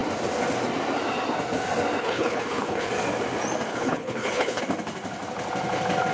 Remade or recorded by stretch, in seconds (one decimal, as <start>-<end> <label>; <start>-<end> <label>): 0.0-2.0 recorded; 2.0-2.9 remade; 2.9-3.7 recorded; 3.7-4.6 remade; 4.6-6.1 recorded